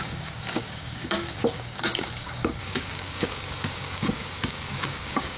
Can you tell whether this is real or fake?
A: fake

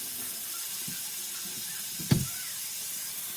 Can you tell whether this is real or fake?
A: real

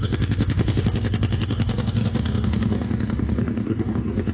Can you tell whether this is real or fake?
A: fake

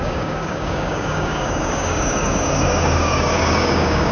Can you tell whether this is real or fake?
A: fake